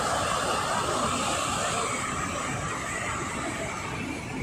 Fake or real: real